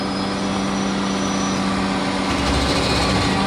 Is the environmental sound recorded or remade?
recorded